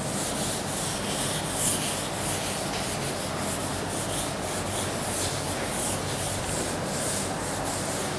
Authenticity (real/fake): real